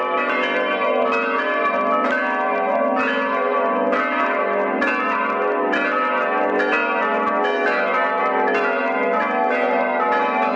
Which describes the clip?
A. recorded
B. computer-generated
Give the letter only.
A